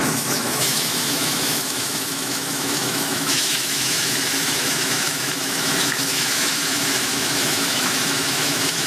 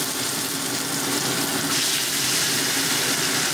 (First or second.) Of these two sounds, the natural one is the second